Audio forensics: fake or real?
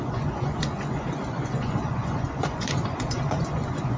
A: fake